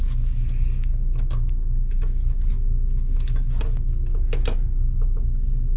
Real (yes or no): yes